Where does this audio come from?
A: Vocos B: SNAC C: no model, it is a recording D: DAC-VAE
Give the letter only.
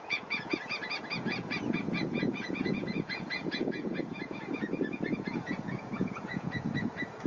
A